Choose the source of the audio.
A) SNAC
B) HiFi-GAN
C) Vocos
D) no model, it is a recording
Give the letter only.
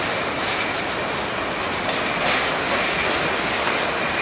D